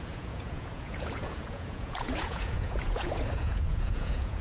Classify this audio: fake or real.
fake